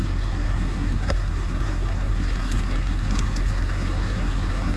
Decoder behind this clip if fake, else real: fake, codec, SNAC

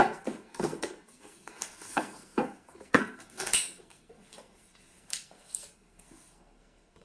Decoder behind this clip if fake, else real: fake, codec, SNAC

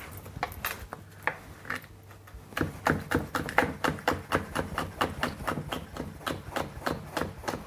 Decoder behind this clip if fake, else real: real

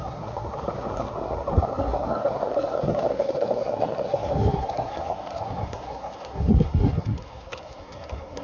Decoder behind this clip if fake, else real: fake, codec, SNAC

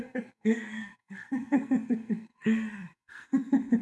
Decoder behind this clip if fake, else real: fake, codec, SNAC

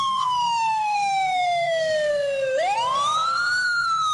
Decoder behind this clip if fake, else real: fake, codec, SNAC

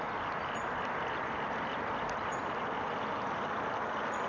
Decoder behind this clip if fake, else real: real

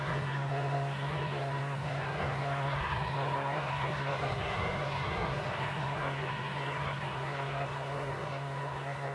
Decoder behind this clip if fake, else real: fake, codec, SNAC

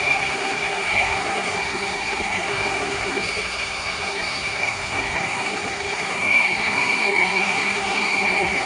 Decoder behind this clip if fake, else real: fake, codec, SNAC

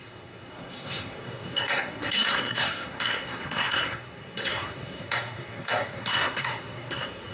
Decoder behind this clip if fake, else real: fake, codec, SNAC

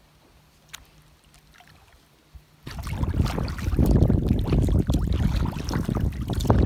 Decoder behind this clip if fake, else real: real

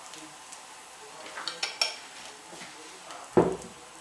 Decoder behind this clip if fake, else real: real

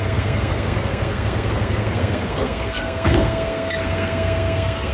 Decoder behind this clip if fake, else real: fake, codec, SNAC